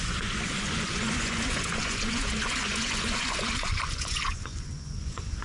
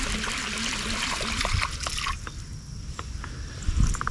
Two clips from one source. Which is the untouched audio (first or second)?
second